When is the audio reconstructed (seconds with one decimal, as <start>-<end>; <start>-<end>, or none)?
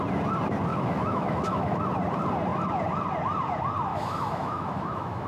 0.7-1.8; 3.9-5.3